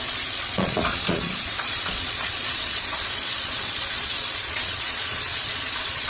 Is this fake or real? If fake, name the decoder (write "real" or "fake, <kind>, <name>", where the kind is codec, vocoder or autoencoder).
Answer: fake, vocoder, Vocos